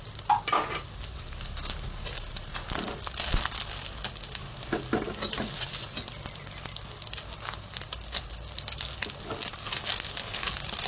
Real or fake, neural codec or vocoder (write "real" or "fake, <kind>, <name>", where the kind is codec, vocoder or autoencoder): real